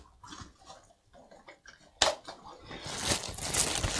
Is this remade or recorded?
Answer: recorded